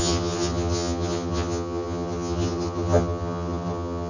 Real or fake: fake